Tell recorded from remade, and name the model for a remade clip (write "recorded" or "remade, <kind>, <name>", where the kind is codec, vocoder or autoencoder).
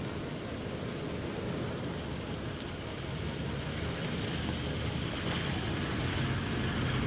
recorded